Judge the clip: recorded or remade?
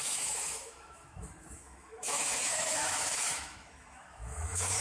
remade